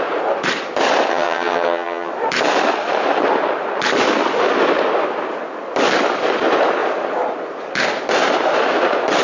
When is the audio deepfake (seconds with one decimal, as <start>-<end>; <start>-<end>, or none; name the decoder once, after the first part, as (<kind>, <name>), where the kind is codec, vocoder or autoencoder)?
1.1-2.1 (vocoder, HiFi-GAN)